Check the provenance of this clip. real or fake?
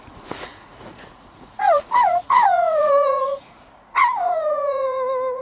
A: fake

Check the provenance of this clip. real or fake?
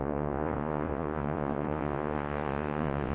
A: fake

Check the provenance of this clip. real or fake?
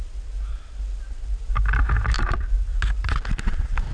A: real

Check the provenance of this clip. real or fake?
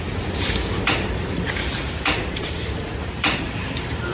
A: fake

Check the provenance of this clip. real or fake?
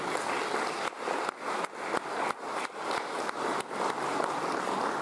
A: real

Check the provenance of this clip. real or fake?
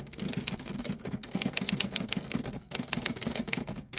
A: fake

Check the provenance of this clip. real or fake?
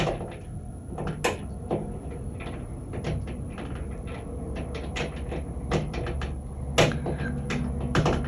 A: real